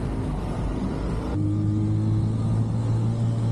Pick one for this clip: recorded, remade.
recorded